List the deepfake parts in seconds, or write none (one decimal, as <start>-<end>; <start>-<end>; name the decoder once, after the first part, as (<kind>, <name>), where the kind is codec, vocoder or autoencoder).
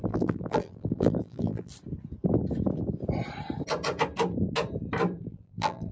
0.0-1.7 (vocoder, BigVGAN v2); 5.2-5.9